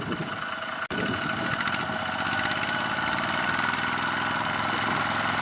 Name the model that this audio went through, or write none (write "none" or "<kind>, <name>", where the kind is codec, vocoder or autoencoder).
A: none